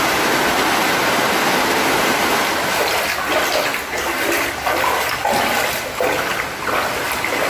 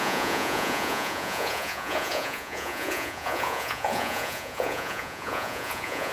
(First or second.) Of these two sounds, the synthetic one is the second